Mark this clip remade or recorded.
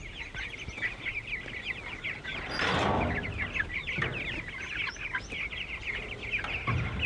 recorded